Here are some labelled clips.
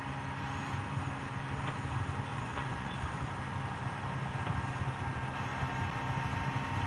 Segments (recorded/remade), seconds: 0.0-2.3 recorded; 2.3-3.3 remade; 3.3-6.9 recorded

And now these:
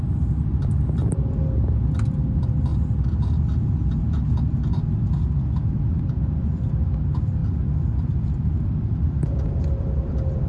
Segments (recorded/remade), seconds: 0.0-2.7 remade; 2.7-4.3 recorded; 4.3-10.5 remade